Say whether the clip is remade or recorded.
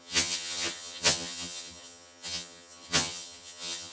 remade